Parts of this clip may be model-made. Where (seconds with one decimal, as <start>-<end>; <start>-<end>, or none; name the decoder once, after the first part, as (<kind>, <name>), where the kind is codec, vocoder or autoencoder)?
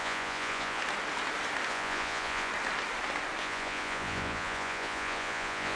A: 0.0-0.8 (vocoder, Vocos); 1.7-2.5; 3.4-5.8